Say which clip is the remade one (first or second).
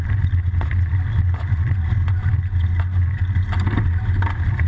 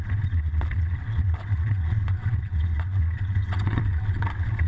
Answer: second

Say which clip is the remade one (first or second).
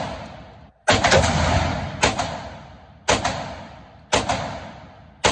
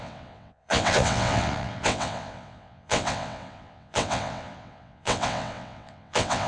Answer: second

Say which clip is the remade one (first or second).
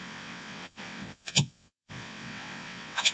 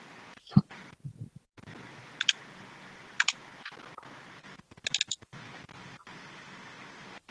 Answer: first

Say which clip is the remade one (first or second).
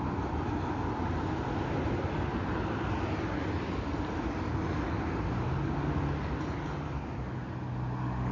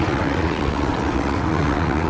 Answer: second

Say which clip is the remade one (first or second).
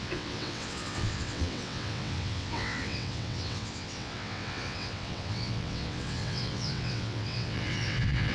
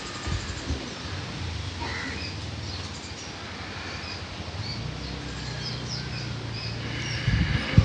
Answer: first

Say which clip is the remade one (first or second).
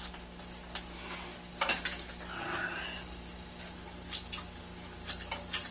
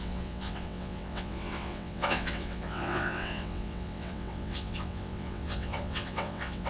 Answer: second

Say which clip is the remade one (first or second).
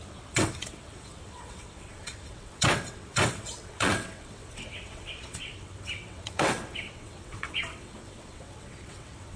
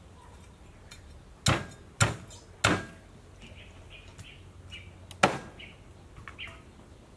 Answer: first